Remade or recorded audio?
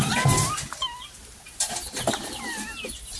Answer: recorded